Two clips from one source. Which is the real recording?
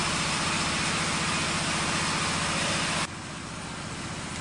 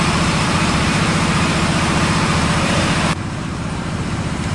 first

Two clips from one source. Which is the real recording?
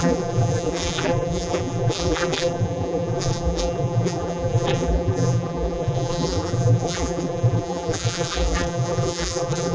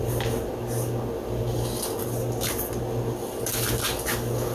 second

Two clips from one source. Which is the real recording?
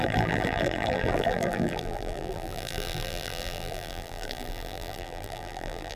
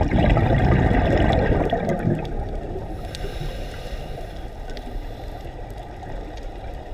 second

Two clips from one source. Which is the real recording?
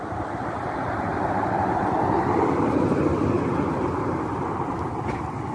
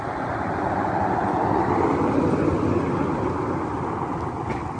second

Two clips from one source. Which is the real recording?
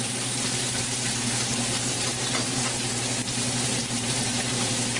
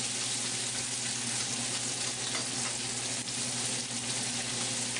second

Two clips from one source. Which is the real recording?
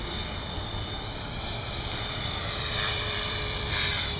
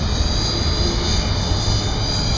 second